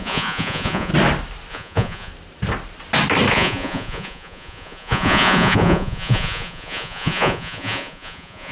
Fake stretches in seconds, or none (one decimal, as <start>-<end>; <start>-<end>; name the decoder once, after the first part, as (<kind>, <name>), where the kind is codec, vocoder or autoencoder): 0.0-0.9 (vocoder, Vocos); 1.5-2.1; 3.3-8.5